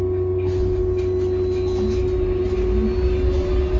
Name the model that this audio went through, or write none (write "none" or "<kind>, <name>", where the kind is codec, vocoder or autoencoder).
none